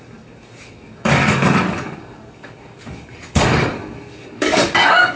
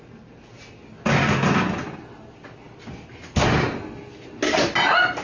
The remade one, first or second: first